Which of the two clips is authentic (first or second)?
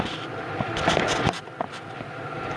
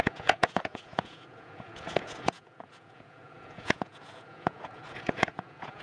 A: first